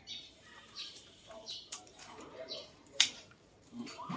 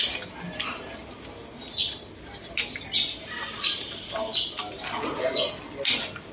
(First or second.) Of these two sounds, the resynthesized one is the first